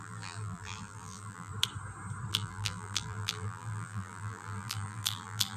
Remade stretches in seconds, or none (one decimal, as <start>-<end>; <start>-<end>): 0.0-1.5; 2.3-5.6